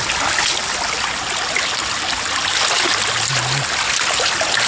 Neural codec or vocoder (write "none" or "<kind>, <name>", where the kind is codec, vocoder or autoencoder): none